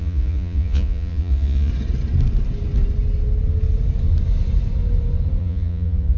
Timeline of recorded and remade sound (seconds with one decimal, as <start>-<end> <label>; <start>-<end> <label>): 0.0-1.7 remade; 1.7-5.4 recorded; 5.4-6.2 remade